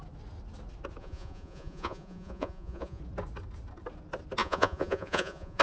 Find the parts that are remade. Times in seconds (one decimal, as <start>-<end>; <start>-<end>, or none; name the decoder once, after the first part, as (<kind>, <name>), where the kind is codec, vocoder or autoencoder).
1.0-3.0 (vocoder, Vocos); 4.4-5.6

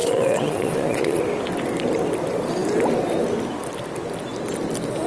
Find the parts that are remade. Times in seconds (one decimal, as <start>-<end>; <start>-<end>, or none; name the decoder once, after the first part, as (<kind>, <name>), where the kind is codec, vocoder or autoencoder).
0.0-1.2 (vocoder, Vocos)

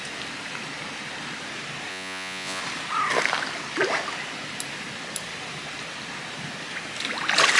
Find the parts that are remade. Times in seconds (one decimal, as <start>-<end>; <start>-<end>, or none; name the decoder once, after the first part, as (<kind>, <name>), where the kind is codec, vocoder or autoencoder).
1.9-2.6 (vocoder, Vocos)

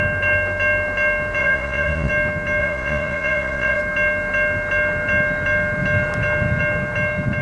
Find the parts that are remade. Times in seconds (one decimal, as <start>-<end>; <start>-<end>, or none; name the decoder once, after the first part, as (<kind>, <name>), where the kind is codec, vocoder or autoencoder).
1.4-2.1 (vocoder, Vocos); 2.6-3.8

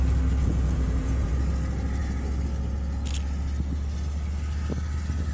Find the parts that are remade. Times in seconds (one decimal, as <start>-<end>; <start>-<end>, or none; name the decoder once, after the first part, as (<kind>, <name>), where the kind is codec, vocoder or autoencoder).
0.4-1.3 (vocoder, Vocos)

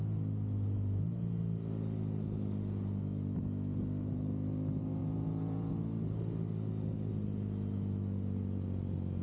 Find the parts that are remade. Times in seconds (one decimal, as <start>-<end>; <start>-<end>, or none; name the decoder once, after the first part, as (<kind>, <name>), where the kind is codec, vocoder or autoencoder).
5.0-5.7 (vocoder, Vocos)